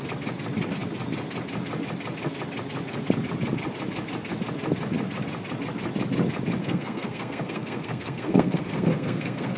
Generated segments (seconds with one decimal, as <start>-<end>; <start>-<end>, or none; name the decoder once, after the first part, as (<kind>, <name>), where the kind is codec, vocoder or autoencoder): 6.6-9.6 (codec, SNAC)